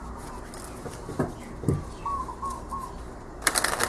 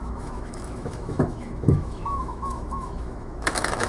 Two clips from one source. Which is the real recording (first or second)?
first